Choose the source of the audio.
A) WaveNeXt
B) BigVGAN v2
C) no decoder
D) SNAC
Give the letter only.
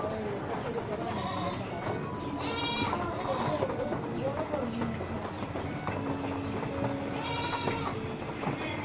C